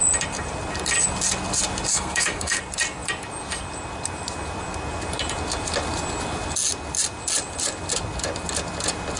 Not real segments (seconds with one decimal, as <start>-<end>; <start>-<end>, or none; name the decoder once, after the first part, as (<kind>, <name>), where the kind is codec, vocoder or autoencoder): 1.9-2.6 (codec, SNAC)